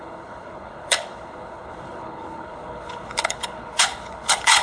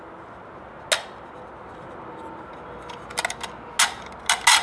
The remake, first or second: first